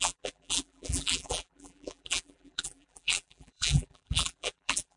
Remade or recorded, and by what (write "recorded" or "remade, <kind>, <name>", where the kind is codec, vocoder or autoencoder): remade, vocoder, BigVGAN v2